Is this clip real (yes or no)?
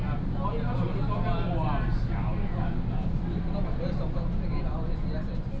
yes